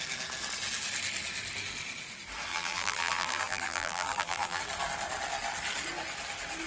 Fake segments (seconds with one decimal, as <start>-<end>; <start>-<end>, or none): 2.5-4.6